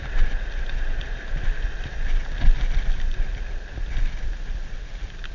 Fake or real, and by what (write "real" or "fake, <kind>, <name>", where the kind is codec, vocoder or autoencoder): real